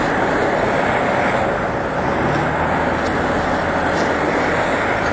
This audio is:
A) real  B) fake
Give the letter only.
A